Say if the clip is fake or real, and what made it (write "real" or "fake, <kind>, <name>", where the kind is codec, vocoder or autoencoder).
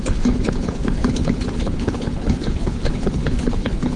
fake, codec, HILCodec